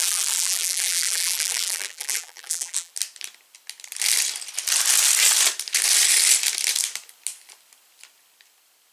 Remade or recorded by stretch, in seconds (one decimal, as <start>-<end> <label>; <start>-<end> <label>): 0.0-2.9 remade; 2.9-8.9 recorded